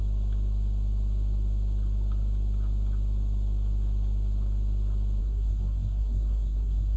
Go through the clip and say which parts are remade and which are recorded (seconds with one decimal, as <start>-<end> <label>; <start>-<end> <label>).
0.0-5.2 recorded; 5.2-7.0 remade